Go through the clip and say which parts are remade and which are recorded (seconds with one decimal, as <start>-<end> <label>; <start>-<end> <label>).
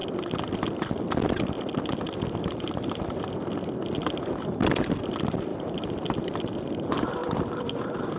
0.0-5.5 recorded; 5.5-6.2 remade; 6.2-7.2 recorded; 7.2-8.2 remade